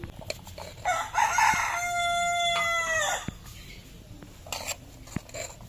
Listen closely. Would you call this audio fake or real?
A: real